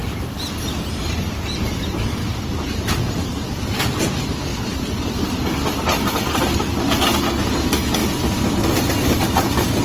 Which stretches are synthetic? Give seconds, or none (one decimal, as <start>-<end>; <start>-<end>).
0.0-1.6; 4.5-6.7; 8.0-9.8